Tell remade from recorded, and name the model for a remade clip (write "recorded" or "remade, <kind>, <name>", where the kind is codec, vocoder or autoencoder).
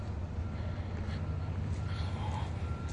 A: recorded